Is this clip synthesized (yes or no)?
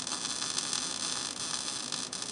no